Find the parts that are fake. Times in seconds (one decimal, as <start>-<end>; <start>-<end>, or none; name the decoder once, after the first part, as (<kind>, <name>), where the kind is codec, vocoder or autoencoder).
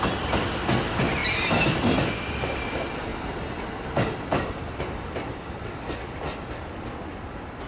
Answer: none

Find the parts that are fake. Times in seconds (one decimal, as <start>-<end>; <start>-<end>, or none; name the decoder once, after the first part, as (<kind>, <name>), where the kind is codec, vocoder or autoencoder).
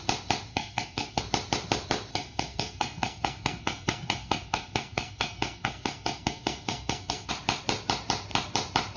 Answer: 0.5-1.2 (codec, SNAC); 2.1-7.3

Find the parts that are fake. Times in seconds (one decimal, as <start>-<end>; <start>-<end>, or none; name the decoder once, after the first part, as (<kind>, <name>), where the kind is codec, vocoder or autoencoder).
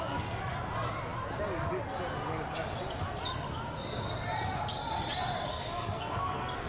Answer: 5.5-6.7 (codec, SNAC)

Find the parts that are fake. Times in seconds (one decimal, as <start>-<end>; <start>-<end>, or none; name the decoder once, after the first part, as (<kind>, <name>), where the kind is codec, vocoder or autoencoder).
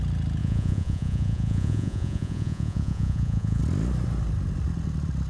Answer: 0.4-3.6 (vocoder, Vocos)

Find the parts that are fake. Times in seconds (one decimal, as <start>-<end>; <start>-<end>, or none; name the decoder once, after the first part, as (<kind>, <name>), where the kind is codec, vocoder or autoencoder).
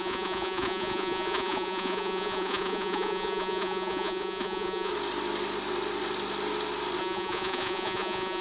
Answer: 0.0-4.9 (vocoder, Vocos); 7.0-8.4